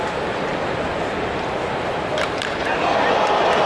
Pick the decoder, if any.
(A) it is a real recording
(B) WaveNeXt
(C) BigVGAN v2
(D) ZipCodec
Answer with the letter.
C